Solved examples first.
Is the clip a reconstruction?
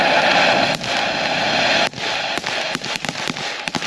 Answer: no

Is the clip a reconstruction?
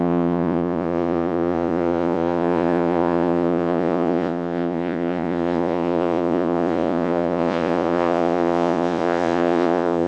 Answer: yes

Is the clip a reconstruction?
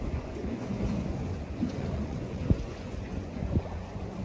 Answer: yes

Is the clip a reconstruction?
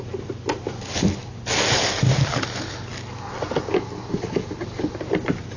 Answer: no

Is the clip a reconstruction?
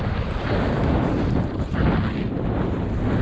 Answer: no